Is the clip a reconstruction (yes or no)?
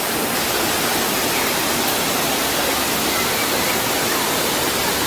no